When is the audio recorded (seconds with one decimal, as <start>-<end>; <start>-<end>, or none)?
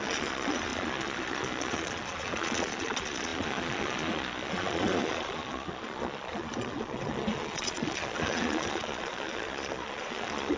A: none